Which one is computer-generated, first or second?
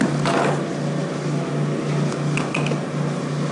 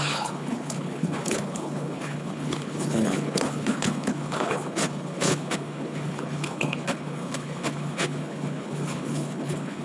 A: second